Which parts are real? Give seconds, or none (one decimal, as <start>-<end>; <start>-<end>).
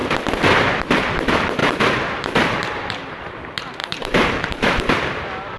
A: 0.0-1.6; 2.9-3.8; 4.9-5.6